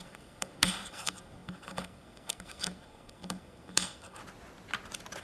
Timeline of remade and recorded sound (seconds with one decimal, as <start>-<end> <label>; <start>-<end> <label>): 0.0-4.2 remade; 4.2-5.2 recorded